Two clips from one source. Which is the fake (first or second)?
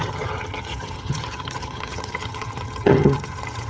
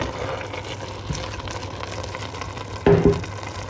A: first